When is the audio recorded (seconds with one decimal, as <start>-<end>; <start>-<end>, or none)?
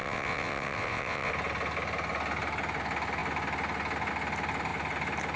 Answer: 1.3-5.4